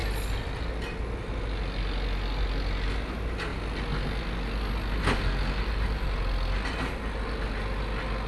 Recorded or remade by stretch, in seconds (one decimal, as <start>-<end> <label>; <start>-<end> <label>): 0.0-8.3 recorded